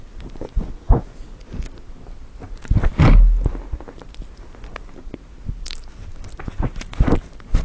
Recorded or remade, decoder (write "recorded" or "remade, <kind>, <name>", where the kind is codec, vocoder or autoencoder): recorded